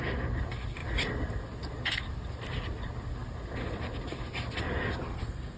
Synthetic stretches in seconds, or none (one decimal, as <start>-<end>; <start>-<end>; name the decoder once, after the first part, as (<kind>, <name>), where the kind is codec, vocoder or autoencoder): 5.1-5.6 (codec, SNAC)